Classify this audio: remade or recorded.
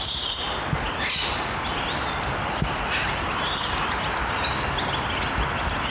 recorded